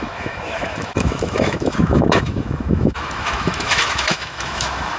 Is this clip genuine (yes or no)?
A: no